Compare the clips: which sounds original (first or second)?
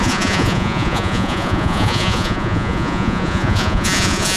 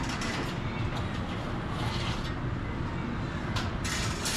second